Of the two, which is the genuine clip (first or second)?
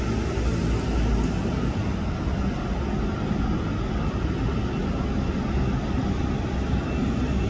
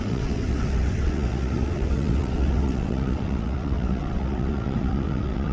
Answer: first